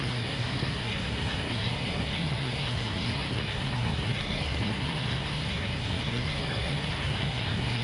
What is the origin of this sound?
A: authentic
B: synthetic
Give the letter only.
B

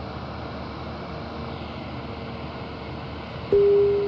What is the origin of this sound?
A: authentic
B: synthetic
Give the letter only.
A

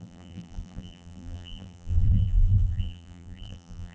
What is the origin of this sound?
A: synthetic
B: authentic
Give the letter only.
A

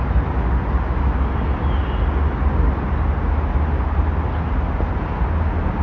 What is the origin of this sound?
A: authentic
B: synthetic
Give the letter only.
A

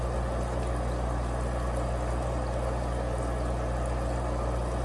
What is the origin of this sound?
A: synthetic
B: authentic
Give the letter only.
B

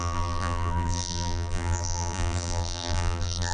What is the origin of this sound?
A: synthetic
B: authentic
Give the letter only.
A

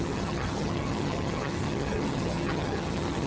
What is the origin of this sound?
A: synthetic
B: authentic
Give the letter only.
A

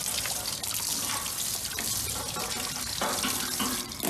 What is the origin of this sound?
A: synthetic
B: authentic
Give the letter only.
B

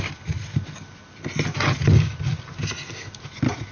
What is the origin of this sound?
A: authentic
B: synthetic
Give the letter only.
A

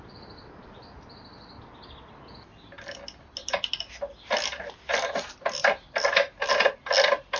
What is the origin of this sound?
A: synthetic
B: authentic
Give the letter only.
B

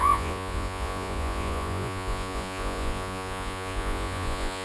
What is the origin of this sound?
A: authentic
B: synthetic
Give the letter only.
B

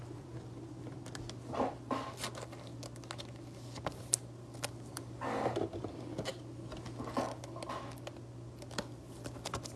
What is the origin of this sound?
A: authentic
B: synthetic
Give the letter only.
A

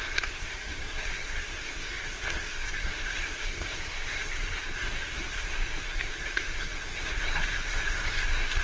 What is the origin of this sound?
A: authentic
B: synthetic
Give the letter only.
B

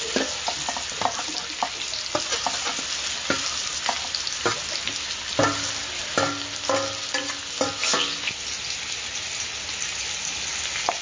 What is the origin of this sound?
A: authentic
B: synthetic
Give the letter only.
A